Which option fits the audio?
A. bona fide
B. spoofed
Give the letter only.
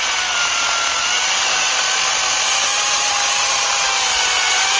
A